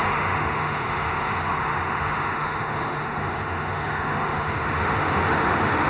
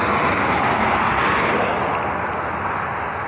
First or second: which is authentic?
second